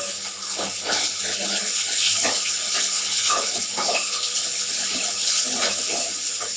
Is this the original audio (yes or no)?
no